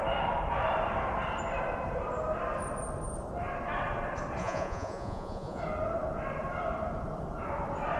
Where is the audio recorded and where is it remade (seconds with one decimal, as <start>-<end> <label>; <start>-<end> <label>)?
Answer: 0.0-4.4 recorded; 4.4-5.6 remade; 5.6-8.0 recorded